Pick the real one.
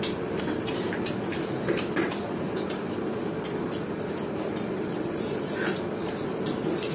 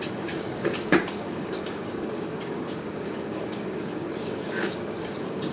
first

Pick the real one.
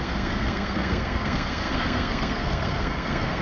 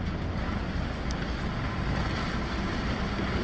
second